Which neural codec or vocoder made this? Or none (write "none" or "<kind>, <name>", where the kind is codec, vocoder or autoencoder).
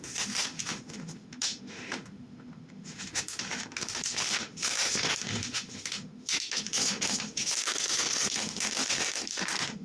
autoencoder, DAC-VAE